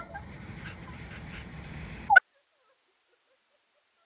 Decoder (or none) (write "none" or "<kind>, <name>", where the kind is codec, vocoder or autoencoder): none